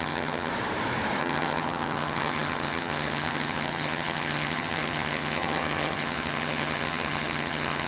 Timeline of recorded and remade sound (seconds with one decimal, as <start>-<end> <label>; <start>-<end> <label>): 0.0-0.5 remade; 0.5-1.2 recorded; 1.2-7.9 remade